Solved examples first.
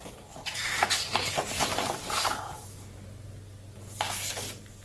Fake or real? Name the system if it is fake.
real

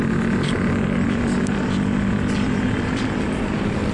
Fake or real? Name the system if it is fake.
fake, vocoder, BigVGAN v2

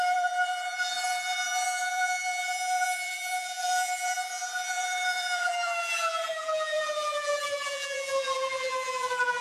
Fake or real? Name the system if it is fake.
fake, vocoder, BigVGAN v2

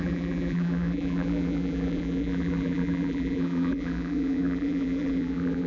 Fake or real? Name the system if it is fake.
fake, vocoder, BigVGAN v2